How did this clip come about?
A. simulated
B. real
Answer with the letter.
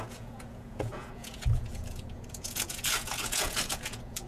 A